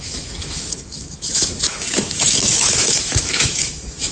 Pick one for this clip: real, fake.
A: fake